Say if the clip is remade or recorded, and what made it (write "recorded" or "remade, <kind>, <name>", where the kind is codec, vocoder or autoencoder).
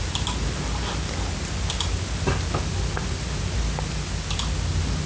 recorded